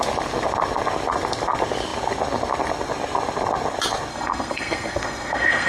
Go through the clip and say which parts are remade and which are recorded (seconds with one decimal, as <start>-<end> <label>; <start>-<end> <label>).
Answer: 0.0-4.1 recorded; 4.1-5.7 remade